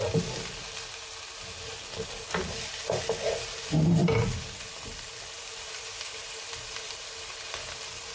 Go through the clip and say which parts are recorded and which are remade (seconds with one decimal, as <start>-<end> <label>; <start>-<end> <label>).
0.0-4.0 recorded; 4.0-7.5 remade; 7.5-8.1 recorded